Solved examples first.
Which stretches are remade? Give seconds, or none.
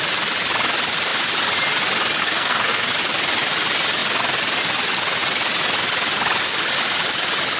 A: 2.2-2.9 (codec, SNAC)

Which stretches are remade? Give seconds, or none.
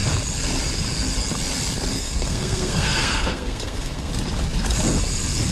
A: 1.9-4.1 (codec, SNAC)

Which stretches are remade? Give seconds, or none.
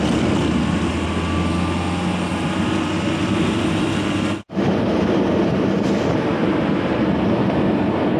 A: 2.3-6.3 (vocoder, BigVGAN v2)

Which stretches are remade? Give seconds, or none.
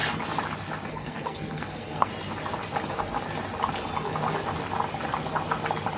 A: 0.9-2.1 (codec, SNAC)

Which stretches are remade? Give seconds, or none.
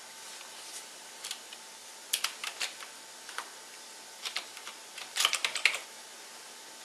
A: none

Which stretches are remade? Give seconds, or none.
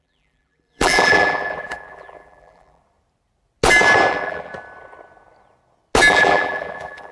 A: 0.0-2.8 (vocoder, BigVGAN v2); 4.1-4.5; 6.1-7.1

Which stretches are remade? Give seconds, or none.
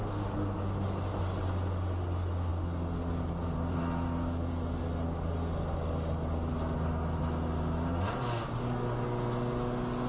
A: none